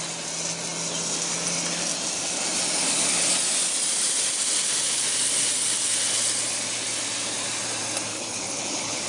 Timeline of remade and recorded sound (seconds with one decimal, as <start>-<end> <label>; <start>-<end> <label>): 0.0-8.1 recorded; 8.1-9.1 remade